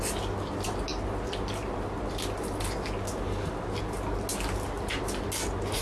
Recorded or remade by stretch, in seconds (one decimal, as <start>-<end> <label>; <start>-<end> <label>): 0.0-5.8 recorded